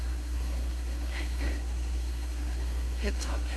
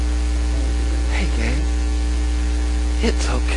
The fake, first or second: first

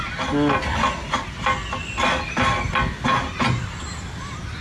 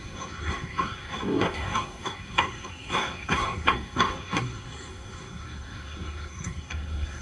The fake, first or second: second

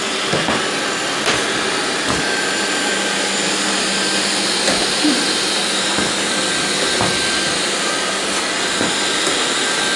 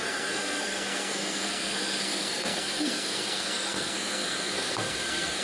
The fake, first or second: second